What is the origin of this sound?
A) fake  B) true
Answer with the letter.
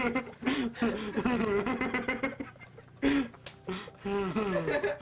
B